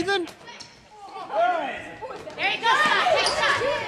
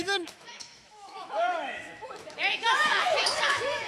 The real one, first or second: first